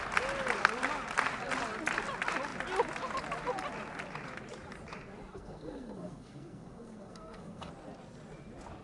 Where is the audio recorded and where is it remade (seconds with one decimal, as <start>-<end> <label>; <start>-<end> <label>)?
0.0-5.3 recorded; 5.3-7.7 remade; 7.7-8.8 recorded